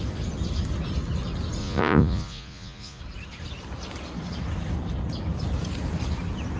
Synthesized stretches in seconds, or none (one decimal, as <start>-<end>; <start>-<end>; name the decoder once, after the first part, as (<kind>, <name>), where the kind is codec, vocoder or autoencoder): 1.6-3.0 (vocoder, Vocos)